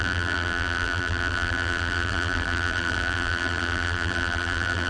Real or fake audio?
fake